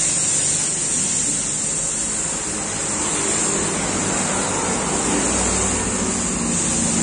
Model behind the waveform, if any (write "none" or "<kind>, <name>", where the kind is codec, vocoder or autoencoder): none